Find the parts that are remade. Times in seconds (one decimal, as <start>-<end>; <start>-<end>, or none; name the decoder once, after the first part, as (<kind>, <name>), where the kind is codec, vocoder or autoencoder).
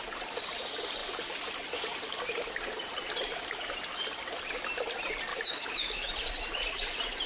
5.3-6.1 (autoencoder, DAC-VAE)